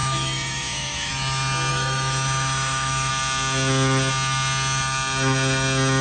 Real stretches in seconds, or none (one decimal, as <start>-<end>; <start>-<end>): 1.1-1.7; 3.1-6.0